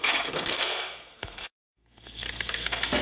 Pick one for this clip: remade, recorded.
remade